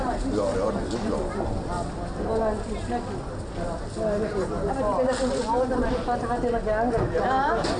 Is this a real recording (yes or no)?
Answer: yes